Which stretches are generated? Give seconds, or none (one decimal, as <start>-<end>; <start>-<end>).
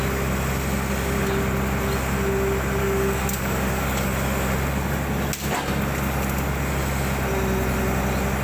2.8-4.1